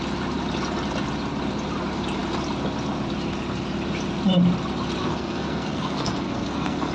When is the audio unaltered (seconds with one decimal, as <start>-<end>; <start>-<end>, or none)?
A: 0.0-5.0